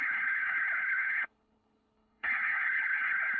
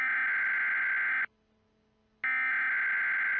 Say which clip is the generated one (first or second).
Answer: first